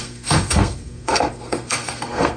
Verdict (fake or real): fake